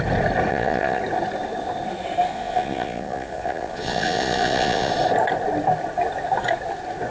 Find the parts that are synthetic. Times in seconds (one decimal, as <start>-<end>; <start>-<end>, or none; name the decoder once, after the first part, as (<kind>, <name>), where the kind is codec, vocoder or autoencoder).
0.5-1.0 (vocoder, Vocos); 2.3-4.9